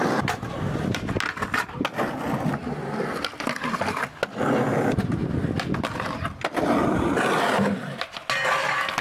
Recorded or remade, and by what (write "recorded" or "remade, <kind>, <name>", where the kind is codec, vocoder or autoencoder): recorded